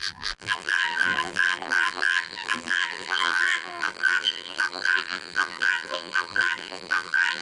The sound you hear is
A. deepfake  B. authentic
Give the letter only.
A